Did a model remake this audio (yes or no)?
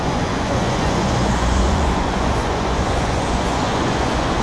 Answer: yes